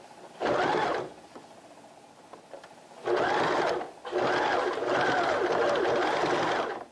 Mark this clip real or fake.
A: real